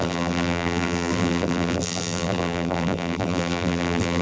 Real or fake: fake